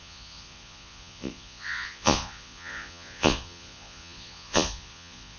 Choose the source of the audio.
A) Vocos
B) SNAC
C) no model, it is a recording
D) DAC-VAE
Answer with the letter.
A